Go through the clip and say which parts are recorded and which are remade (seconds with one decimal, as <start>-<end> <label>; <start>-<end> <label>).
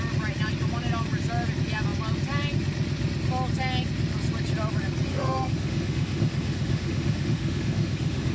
0.0-5.1 recorded; 5.1-8.3 remade